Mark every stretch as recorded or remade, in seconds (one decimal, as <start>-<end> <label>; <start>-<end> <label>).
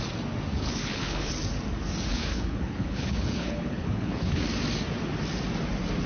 0.0-0.5 recorded; 0.5-1.3 remade; 1.3-2.1 recorded; 2.1-4.4 remade; 4.4-6.1 recorded